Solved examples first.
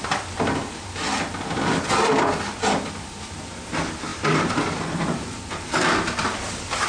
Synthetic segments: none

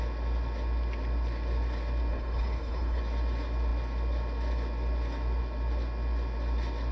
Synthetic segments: 2.1-3.0

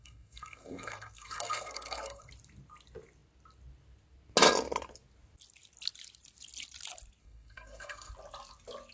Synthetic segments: 0.0-2.3; 7.2-8.1

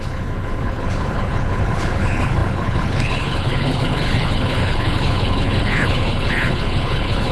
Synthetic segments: 0.0-7.3

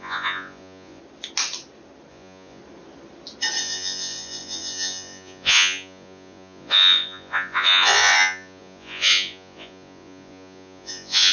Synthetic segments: 0.0-1.0; 2.1-2.6; 3.6-11.3

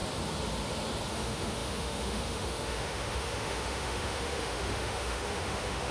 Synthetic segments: 1.1-5.9

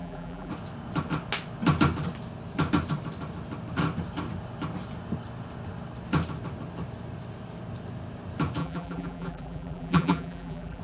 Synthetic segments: 0.0-0.5; 8.6-10.8

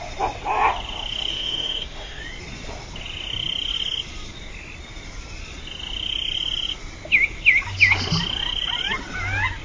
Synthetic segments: 1.3-2.2